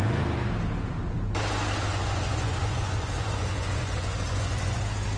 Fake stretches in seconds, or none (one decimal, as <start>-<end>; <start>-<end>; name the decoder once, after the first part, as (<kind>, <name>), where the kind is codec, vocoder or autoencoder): 1.9-4.8 (vocoder, Vocos)